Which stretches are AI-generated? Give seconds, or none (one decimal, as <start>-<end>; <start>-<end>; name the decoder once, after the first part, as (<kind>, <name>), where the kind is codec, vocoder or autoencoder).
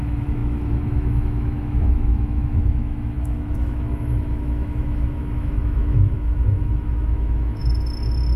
0.0-7.6 (autoencoder, DAC-VAE)